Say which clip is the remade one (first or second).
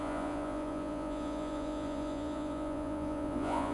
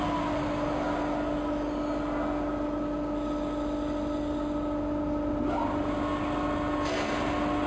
first